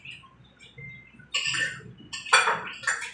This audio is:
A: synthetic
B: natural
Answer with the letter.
B